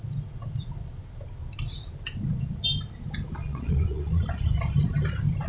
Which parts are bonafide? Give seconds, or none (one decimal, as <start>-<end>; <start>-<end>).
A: 0.0-3.4; 4.2-5.5